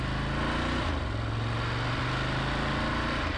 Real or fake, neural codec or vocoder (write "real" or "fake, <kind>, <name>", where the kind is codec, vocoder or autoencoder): real